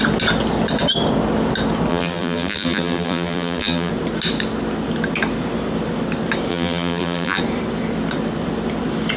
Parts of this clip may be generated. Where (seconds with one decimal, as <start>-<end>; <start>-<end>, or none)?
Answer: 1.9-3.9; 6.5-7.4